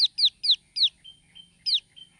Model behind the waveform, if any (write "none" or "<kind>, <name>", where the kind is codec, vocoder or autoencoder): none